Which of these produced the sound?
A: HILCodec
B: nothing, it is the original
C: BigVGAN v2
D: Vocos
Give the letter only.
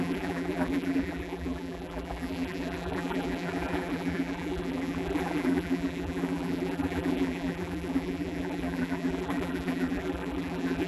C